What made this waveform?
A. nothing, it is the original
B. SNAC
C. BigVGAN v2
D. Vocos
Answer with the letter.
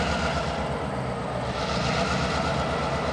A